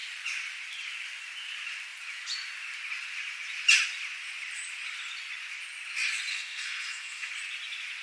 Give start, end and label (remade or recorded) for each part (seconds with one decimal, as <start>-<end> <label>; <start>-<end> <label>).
0.0-6.3 recorded; 6.3-7.3 remade; 7.3-8.0 recorded